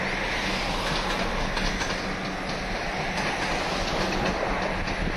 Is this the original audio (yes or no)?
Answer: yes